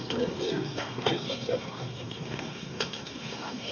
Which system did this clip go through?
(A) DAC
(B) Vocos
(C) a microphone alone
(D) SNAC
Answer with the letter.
D